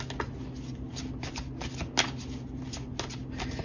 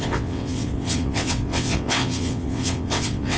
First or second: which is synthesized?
second